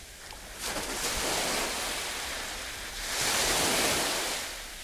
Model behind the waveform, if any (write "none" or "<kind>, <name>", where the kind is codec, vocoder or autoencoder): none